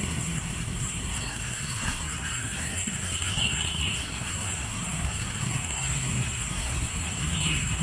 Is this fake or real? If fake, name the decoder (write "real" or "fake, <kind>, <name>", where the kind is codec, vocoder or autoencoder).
fake, codec, SNAC